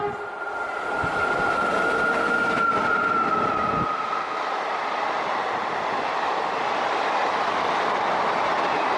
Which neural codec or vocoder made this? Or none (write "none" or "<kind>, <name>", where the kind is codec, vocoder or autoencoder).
none